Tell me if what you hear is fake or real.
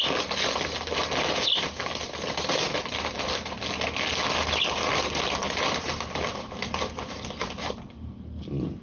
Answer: real